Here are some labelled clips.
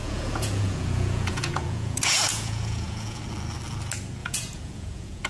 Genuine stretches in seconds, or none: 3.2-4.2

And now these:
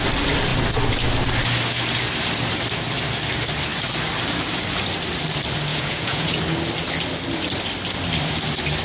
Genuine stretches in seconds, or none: 0.0-5.7; 6.4-8.8